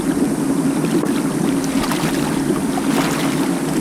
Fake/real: real